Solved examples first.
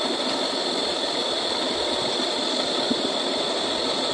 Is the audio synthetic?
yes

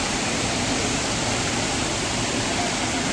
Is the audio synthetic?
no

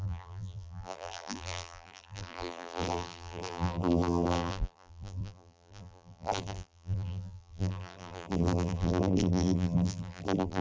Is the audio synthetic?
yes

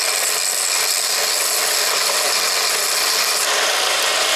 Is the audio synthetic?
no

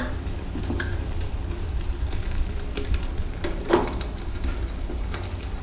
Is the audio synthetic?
yes